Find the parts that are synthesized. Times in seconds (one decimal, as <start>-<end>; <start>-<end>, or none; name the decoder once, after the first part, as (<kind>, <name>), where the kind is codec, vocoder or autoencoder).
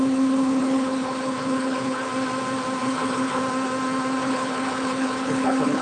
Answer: 0.0-2.1 (codec, HILCodec); 2.8-3.4; 4.2-5.8